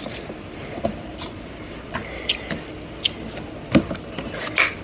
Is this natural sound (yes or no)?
no